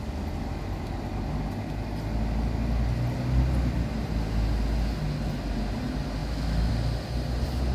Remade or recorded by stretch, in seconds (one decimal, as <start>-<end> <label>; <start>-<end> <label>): 0.0-6.2 recorded; 6.2-6.7 remade; 6.7-7.7 recorded